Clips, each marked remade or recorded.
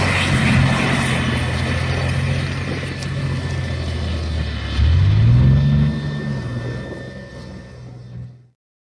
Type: recorded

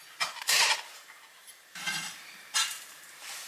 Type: remade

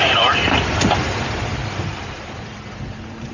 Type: remade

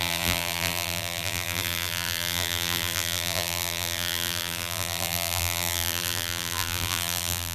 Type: remade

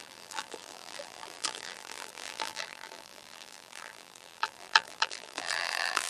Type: remade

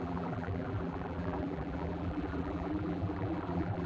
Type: remade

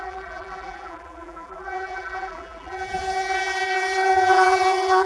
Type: remade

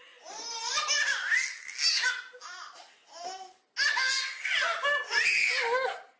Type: recorded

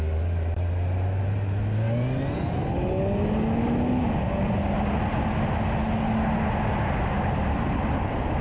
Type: recorded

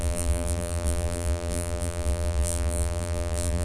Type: remade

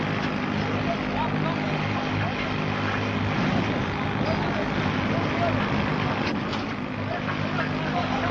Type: recorded